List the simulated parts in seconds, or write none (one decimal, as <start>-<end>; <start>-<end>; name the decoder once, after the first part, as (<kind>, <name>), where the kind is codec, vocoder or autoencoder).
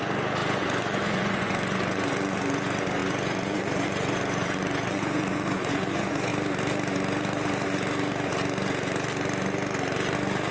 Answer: 0.0-6.3 (vocoder, Vocos)